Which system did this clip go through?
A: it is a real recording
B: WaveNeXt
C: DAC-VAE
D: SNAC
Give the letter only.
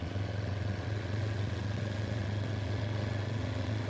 B